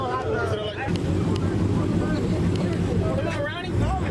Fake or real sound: fake